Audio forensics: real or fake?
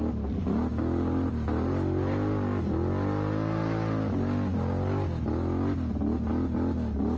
real